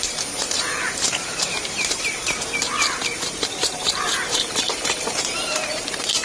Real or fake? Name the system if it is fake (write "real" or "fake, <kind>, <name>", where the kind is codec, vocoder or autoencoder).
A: fake, vocoder, BigVGAN v2